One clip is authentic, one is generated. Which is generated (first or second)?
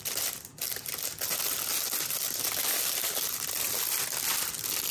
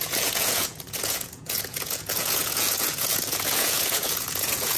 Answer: second